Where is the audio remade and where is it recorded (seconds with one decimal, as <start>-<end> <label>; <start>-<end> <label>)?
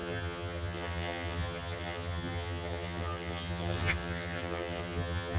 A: 0.0-5.4 remade